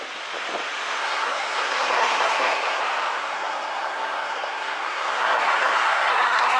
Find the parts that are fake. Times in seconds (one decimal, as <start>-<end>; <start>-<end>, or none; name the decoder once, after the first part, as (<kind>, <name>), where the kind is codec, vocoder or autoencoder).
1.0-2.8 (codec, SNAC); 3.2-6.6